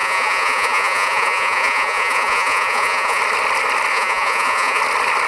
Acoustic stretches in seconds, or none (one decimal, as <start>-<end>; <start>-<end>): 3.2-3.9; 4.8-5.3